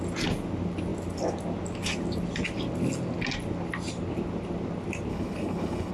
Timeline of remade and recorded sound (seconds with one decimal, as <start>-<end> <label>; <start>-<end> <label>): 0.0-5.1 recorded; 5.1-5.9 remade